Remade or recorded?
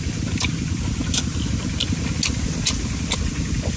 recorded